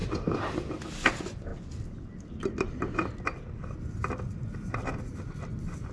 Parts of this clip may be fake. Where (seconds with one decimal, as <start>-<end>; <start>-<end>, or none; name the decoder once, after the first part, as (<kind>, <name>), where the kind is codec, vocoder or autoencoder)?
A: 1.1-1.5 (vocoder, BigVGAN v2); 5.0-5.9